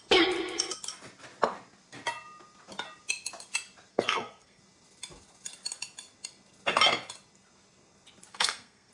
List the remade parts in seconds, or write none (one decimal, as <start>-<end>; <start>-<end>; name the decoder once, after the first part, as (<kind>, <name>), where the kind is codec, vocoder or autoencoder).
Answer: 3.9-4.6 (codec, SNAC); 8.3-8.9